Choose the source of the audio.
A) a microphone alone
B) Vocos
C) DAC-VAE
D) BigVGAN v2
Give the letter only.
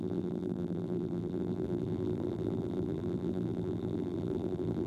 D